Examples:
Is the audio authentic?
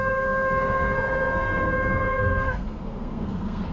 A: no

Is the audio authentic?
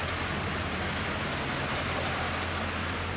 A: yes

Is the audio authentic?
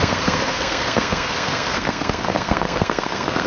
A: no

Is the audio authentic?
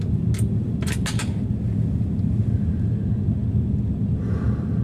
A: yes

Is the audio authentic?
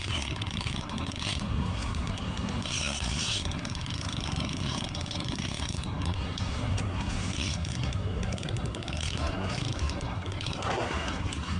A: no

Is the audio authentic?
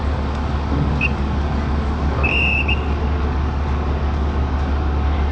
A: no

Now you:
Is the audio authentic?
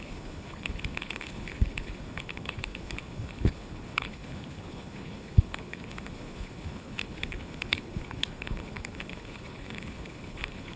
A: no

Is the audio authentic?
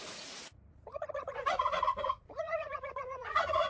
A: no